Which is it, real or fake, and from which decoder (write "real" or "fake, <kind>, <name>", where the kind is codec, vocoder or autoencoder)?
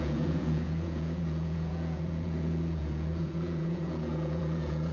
fake, vocoder, Vocos